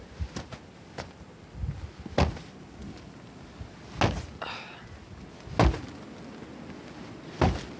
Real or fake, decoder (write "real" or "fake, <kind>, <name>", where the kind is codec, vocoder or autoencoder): real